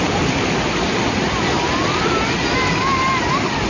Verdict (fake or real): real